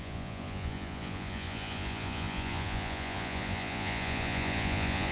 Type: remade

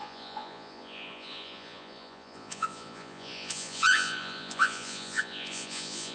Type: remade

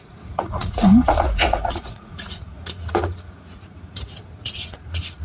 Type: remade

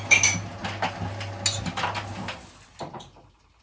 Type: recorded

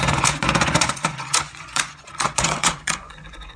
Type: remade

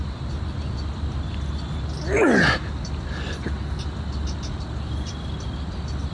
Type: recorded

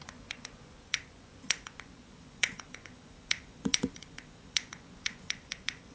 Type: remade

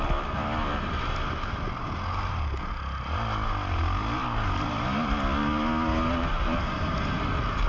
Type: recorded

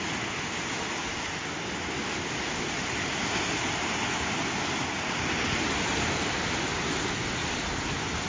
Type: recorded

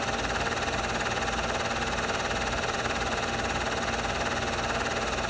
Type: recorded